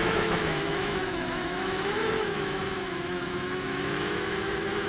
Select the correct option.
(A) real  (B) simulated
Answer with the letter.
B